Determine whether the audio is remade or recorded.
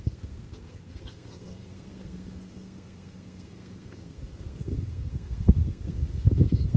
remade